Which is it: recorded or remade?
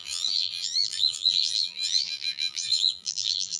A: remade